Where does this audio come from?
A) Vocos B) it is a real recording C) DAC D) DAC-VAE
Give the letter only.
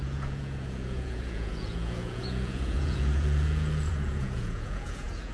A